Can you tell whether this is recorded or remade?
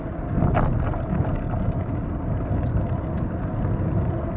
recorded